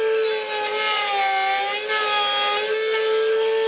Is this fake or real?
real